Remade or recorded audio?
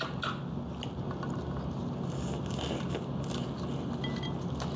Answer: recorded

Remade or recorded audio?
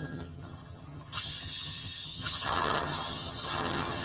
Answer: remade